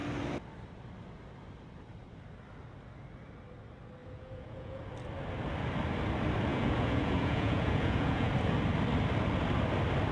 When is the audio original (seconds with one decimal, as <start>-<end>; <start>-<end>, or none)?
0.0-4.0; 4.8-6.5; 8.3-10.1

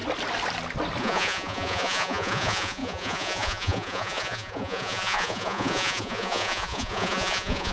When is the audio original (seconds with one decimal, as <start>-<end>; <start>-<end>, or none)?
0.0-1.0

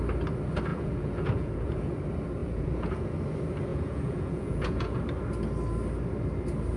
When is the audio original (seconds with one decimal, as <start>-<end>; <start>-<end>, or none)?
0.0-0.7; 1.9-2.4; 3.1-3.7; 5.0-6.8